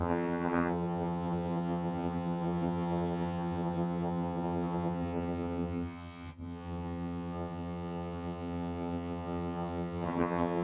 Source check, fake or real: fake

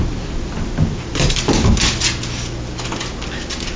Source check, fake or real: real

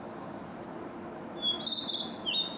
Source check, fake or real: real